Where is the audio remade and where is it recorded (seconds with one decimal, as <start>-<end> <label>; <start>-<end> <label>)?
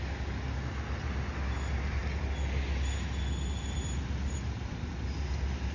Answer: 0.0-5.7 recorded